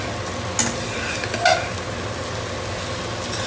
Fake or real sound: real